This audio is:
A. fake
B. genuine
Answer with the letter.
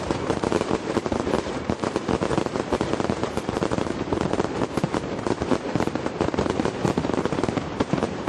A